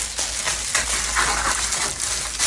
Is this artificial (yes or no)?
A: no